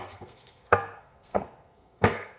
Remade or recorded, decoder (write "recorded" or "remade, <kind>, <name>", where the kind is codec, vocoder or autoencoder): remade, codec, SNAC